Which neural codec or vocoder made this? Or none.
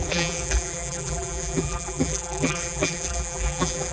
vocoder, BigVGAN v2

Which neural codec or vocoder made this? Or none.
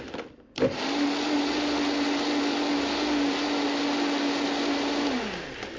none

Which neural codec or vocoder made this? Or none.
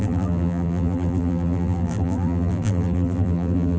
vocoder, BigVGAN v2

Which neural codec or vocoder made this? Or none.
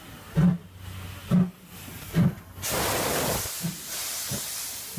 none